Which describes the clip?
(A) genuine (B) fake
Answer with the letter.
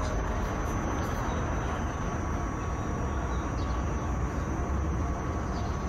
A